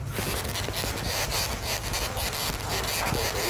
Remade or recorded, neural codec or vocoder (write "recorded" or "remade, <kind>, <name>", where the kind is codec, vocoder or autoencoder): recorded